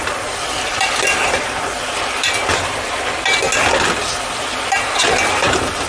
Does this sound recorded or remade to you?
recorded